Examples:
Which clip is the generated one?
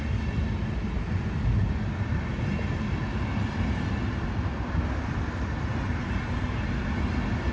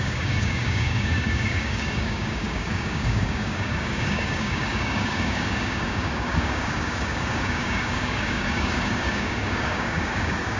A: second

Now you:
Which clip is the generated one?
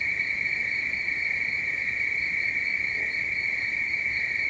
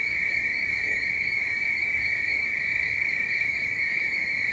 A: second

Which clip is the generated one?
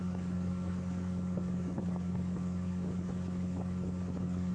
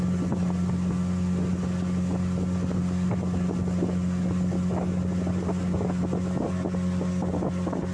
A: first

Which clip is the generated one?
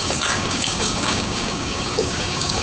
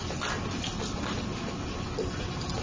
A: first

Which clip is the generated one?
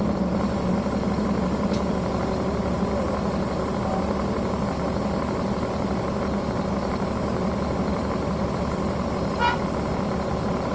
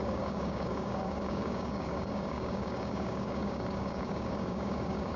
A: second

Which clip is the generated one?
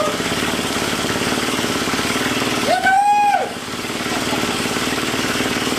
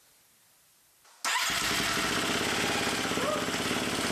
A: first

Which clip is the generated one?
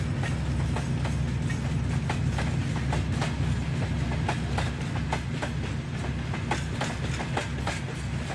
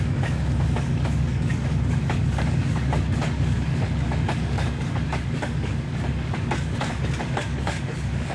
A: second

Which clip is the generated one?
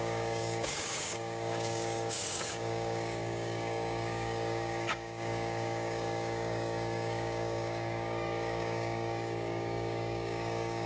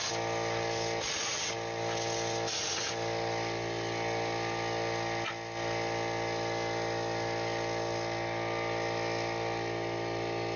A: first